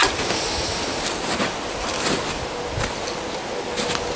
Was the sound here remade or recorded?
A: recorded